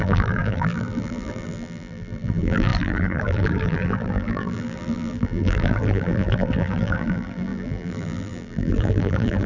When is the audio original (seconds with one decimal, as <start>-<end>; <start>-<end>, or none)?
none